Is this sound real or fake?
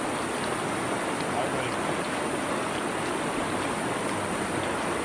real